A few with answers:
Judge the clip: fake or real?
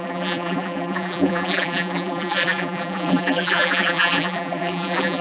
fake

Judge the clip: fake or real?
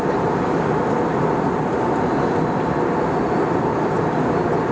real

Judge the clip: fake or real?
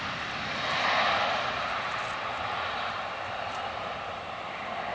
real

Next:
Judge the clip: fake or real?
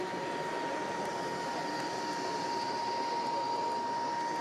real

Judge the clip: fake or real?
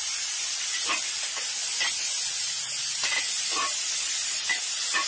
real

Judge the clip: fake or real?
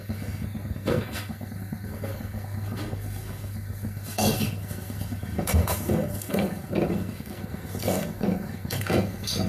fake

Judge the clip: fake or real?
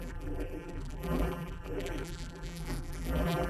fake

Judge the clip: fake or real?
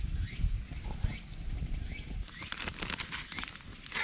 real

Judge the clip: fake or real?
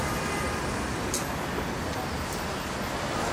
real